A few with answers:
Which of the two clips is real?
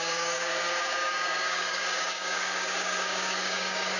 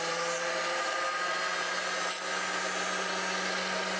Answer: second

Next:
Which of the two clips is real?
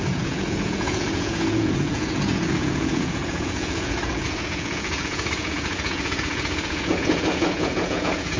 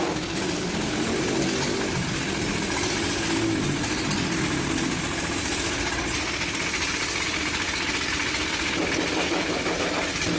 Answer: second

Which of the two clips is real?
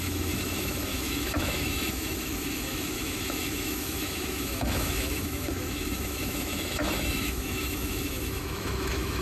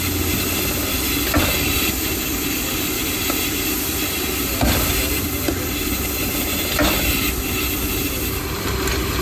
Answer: second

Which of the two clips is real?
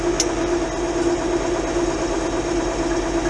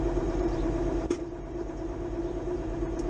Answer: first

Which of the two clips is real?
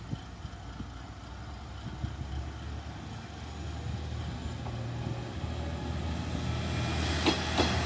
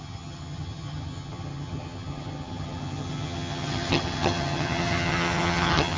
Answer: first